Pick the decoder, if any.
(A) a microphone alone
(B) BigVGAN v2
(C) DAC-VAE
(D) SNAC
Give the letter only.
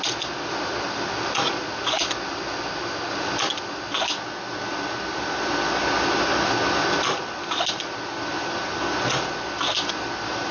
A